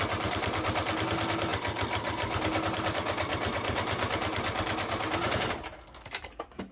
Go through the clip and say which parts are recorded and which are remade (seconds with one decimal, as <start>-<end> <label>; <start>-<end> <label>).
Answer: 0.0-6.7 recorded